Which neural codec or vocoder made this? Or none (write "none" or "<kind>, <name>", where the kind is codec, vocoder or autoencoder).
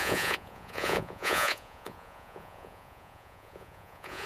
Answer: vocoder, Vocos